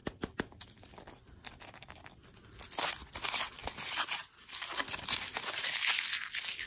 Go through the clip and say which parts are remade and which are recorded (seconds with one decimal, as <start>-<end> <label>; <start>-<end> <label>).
0.0-6.7 recorded